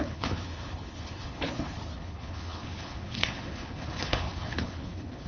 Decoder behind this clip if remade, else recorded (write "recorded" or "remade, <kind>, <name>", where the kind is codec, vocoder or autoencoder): remade, codec, HILCodec